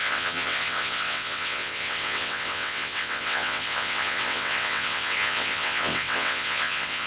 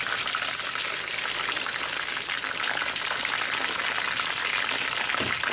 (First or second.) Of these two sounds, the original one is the second